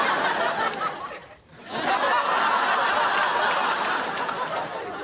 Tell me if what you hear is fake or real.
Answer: real